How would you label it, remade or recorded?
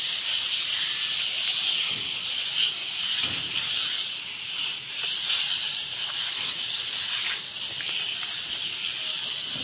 recorded